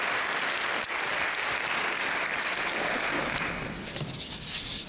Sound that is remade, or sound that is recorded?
recorded